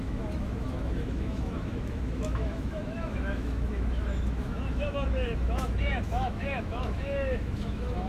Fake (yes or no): yes